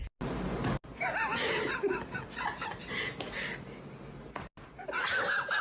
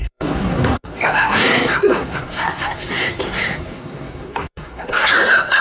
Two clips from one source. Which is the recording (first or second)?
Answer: first